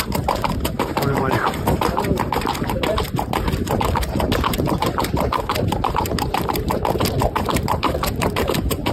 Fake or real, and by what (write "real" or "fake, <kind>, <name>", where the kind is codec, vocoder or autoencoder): fake, vocoder, BigVGAN v2